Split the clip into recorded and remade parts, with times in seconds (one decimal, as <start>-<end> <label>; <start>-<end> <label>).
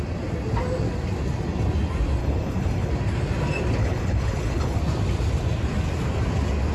0.0-2.2 recorded; 2.2-2.9 remade; 2.9-3.8 recorded; 3.8-4.8 remade; 4.8-6.7 recorded